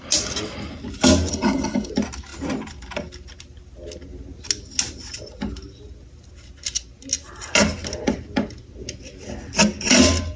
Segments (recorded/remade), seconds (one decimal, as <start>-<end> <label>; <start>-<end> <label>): 0.0-1.3 recorded; 1.3-1.9 remade; 1.9-10.4 recorded